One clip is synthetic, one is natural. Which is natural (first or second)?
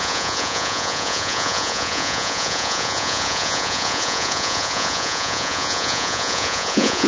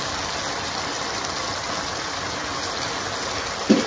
second